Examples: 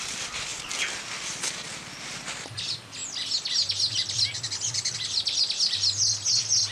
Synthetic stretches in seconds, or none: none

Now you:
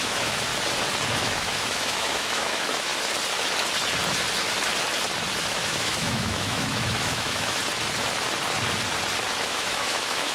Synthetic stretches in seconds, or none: 0.0-0.5 (autoencoder, DAC-VAE); 1.2-2.9; 5.5-7.6; 9.4-10.3

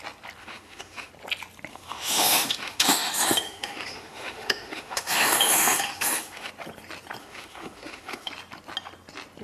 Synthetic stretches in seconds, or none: 0.4-1.1 (autoencoder, DAC-VAE); 1.7-6.5; 7.2-8.3